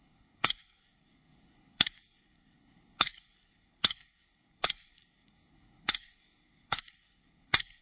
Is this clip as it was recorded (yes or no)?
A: no